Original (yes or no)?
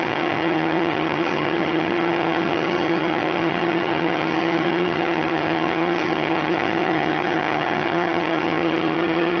no